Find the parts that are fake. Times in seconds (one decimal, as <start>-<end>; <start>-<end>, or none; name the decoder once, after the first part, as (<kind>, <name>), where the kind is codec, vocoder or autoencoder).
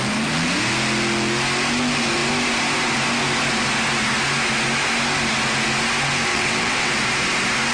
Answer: 6.3-6.9 (vocoder, WaveNeXt)